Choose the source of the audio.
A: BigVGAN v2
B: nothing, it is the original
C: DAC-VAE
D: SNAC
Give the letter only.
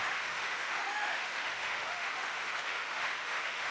C